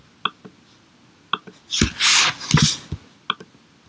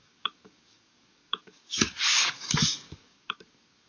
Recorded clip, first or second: first